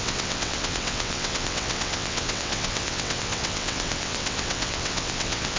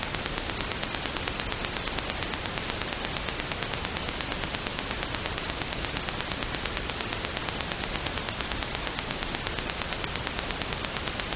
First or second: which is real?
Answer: second